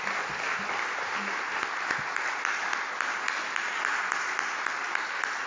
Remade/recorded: recorded